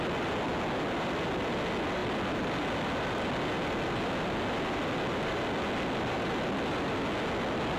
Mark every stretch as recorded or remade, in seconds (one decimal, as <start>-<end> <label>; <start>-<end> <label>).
0.0-7.8 recorded